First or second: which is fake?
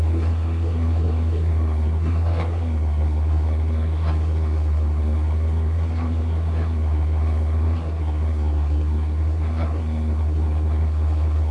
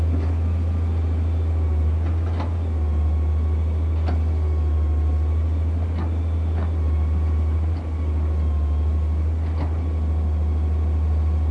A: first